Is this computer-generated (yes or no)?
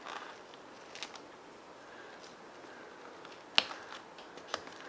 no